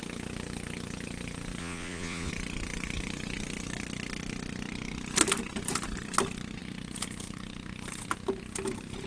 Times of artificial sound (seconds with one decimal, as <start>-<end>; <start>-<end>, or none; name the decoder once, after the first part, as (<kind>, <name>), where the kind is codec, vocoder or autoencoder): 1.6-2.3 (vocoder, Vocos)

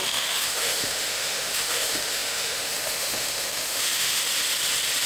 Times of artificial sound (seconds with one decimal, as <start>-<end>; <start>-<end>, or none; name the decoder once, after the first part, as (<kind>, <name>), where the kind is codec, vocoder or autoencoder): 0.0-4.2 (autoencoder, DAC-VAE)

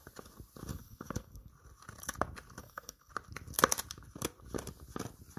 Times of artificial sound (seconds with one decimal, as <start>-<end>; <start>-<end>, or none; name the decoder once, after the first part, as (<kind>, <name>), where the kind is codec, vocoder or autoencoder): 0.7-1.5 (codec, SNAC); 2.6-3.1

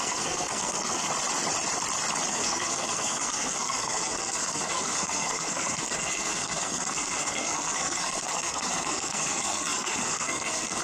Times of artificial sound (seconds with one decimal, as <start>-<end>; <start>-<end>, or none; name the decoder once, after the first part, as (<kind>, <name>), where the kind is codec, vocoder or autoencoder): 0.0-1.1 (codec, SNAC); 2.3-10.8

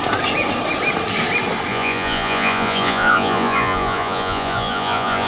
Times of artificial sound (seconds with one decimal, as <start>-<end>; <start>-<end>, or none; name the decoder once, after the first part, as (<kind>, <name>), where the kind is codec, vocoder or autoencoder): 1.7-5.3 (vocoder, Vocos)

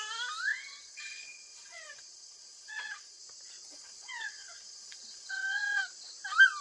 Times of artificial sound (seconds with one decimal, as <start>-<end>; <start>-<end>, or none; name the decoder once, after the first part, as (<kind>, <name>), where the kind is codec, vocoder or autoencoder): 0.5-3.2 (vocoder, WaveNeXt); 3.7-5.8

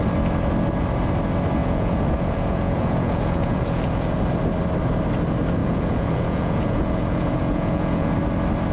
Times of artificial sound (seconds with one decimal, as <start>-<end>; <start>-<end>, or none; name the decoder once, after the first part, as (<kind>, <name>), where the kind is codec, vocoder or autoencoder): 1.6-4.2 (vocoder, Vocos); 5.6-8.1

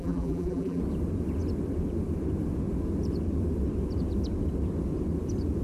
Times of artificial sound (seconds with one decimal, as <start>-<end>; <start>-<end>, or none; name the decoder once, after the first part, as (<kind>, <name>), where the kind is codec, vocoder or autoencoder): 0.0-0.8 (vocoder, BigVGAN v2)